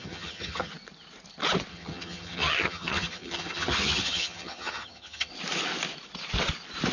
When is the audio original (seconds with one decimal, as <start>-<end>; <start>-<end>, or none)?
0.7-1.7; 5.3-6.9